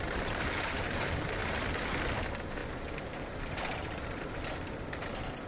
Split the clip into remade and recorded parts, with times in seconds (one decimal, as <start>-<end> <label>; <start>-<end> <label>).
0.0-1.4 remade; 1.4-2.1 recorded; 2.1-5.5 remade